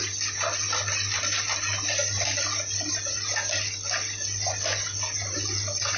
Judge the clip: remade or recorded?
recorded